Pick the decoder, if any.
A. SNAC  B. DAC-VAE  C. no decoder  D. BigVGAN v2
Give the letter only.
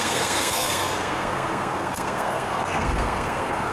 A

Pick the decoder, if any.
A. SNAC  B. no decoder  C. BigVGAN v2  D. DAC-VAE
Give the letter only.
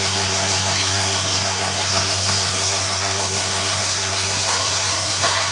A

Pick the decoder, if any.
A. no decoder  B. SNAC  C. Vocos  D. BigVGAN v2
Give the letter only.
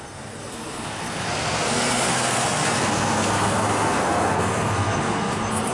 B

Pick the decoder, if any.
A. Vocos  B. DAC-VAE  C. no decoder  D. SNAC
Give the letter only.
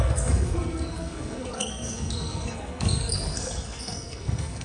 D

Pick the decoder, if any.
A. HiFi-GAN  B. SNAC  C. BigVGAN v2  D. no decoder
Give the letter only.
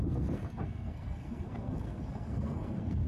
B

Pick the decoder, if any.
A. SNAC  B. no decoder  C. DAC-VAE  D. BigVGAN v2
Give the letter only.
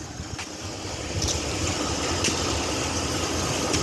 B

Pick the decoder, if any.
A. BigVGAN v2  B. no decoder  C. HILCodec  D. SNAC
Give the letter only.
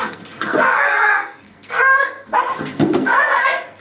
D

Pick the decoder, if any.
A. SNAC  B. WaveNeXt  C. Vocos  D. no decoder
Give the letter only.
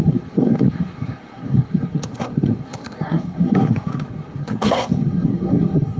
A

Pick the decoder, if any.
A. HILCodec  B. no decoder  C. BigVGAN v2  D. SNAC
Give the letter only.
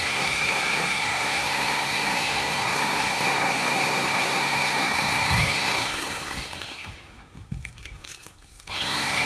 D